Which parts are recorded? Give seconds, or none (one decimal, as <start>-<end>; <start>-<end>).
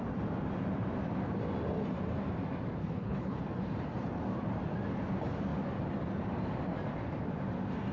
0.0-2.8; 3.4-7.9